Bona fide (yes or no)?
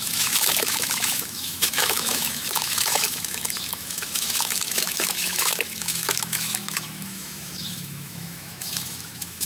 no